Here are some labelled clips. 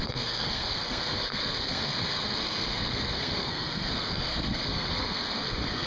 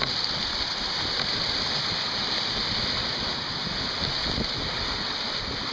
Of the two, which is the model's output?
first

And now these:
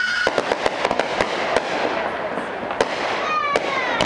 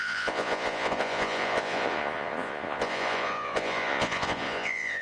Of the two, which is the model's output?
second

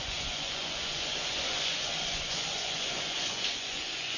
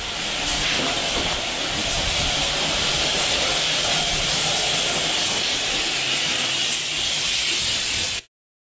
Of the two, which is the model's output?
first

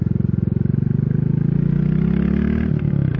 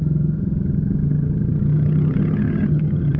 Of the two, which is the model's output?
second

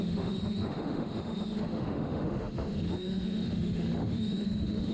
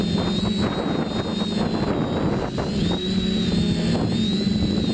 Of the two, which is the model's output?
first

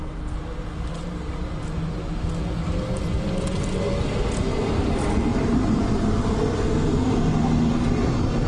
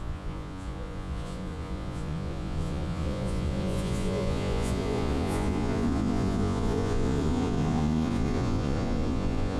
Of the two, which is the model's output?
second